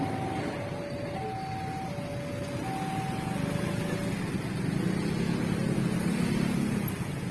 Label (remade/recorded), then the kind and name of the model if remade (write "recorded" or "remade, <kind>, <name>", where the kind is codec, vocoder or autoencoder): recorded